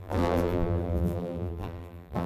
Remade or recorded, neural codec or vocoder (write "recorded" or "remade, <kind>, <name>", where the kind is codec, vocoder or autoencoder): remade, vocoder, BigVGAN v2